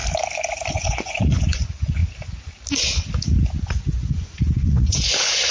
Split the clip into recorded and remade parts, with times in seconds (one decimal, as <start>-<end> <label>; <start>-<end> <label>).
0.0-0.7 recorded; 0.7-2.0 remade; 2.0-3.6 recorded; 3.6-5.5 remade